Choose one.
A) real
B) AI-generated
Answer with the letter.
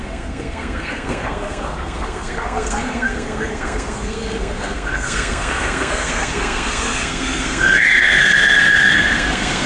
B